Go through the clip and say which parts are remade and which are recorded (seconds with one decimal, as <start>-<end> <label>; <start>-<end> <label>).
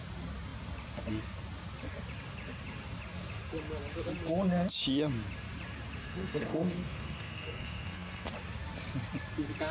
0.0-6.0 recorded; 6.0-8.3 remade; 8.3-9.7 recorded